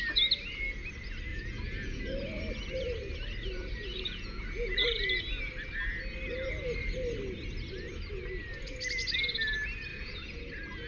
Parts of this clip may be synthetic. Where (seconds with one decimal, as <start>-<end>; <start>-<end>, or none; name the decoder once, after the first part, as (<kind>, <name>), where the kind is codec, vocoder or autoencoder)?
1.3-2.0 (vocoder, Vocos); 3.9-5.2; 9.9-10.4